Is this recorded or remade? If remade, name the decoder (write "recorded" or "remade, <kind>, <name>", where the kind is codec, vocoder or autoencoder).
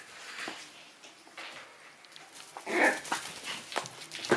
recorded